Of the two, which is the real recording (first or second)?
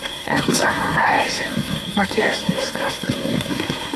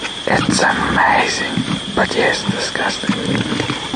second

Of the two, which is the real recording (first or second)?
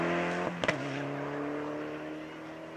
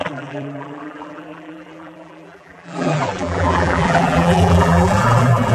first